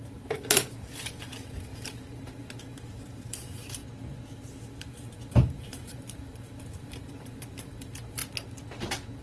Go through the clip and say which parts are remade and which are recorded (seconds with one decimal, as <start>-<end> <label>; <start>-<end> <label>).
0.0-3.8 remade; 3.8-4.7 recorded; 4.7-8.2 remade; 8.2-9.2 recorded